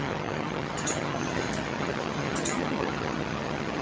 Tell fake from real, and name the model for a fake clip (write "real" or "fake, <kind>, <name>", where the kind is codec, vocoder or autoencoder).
fake, vocoder, HiFi-GAN